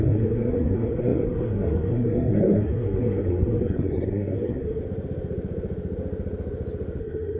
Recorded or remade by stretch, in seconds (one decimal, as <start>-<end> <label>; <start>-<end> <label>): 0.0-4.8 remade; 4.8-7.0 recorded; 7.0-7.4 remade